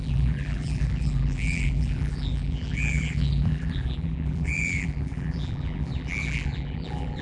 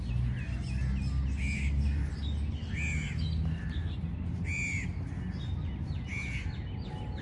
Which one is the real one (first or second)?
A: second